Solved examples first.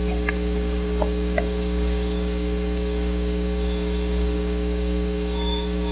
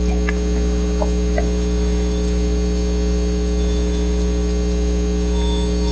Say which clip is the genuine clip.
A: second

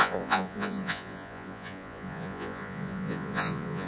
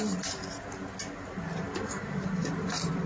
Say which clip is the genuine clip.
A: second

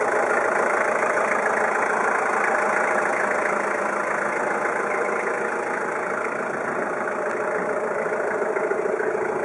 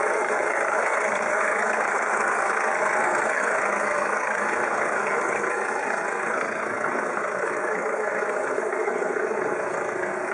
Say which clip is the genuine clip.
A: first